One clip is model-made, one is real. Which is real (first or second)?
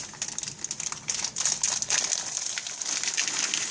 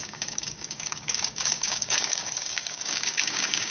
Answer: first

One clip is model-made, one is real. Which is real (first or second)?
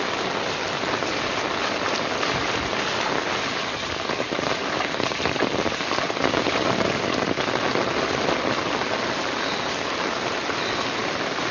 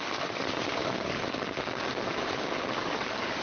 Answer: first